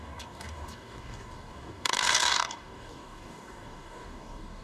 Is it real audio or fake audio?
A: fake